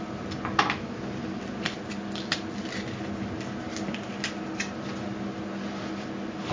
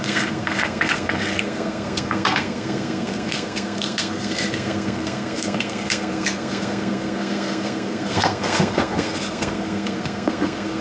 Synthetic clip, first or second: second